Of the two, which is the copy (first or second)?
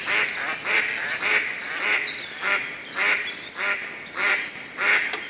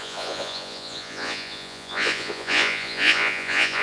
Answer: second